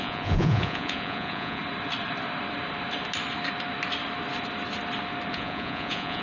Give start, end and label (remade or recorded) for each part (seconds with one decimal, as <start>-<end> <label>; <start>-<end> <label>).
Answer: 0.0-1.6 remade; 1.6-5.3 recorded; 5.3-6.2 remade